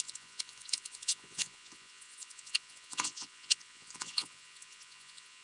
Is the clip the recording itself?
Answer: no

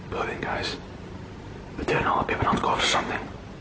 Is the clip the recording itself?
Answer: yes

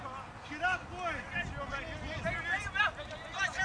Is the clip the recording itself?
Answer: yes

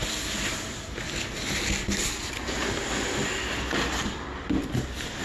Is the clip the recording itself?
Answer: yes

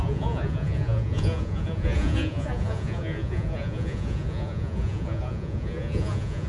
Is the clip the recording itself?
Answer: no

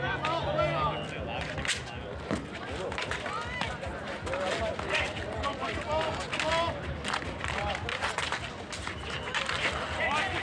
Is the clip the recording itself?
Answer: yes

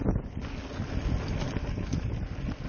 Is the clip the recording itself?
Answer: yes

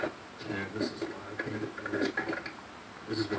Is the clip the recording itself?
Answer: yes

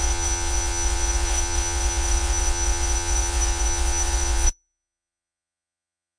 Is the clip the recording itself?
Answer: no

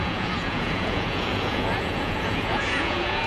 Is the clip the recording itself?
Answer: no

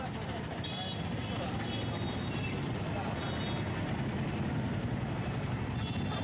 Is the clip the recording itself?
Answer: yes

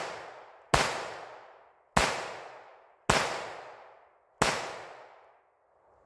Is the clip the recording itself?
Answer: yes